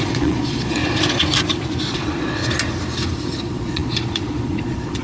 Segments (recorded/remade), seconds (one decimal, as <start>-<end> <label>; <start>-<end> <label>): 0.0-0.8 remade; 0.8-1.9 recorded; 1.9-2.4 remade; 2.4-3.4 recorded; 3.4-5.0 remade